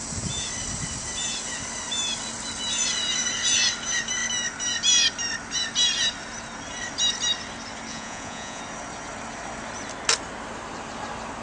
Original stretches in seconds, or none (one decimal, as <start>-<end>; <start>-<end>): 0.0-7.9; 8.6-11.4